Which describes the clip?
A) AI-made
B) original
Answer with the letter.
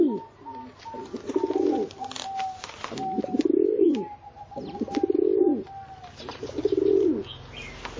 B